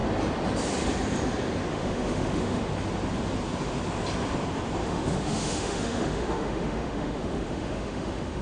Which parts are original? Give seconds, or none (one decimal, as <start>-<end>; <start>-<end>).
0.0-1.7; 2.6-4.8